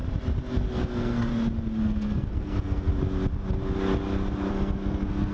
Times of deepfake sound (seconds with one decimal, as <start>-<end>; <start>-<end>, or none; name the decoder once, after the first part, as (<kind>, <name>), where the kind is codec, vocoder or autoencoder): 0.7-1.3 (codec, SNAC); 1.8-2.9; 4.5-5.3